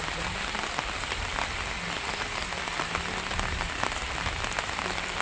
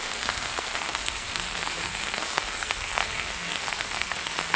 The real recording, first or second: first